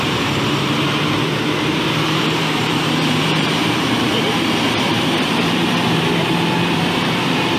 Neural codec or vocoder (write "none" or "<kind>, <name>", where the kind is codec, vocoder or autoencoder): vocoder, BigVGAN v2